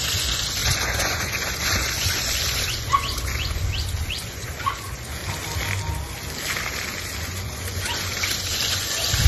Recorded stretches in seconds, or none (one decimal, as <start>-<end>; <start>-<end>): 5.2-7.2